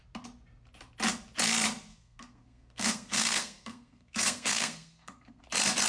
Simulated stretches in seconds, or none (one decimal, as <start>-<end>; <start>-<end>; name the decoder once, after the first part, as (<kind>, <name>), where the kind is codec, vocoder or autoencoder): 1.9-5.4 (codec, SNAC)